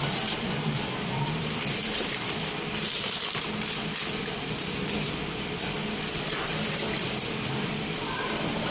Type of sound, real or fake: fake